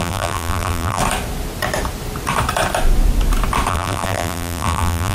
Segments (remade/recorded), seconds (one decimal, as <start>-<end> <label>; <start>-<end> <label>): 0.0-1.0 remade; 1.0-3.7 recorded; 3.7-5.1 remade

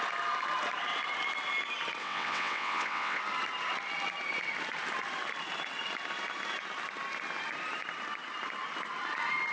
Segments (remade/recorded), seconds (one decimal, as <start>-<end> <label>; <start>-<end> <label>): 0.0-2.0 recorded; 2.0-3.2 remade; 3.2-9.5 recorded

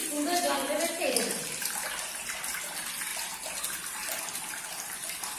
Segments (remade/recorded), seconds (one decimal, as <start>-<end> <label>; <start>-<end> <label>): 0.0-5.4 recorded

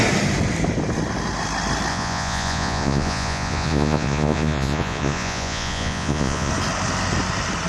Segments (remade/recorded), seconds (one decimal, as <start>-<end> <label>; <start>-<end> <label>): 0.0-1.9 recorded; 1.9-6.5 remade; 6.5-7.7 recorded

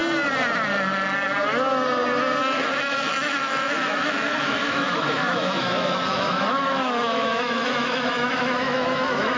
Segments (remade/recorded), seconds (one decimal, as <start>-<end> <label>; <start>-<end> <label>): 0.0-2.4 recorded; 2.4-9.4 remade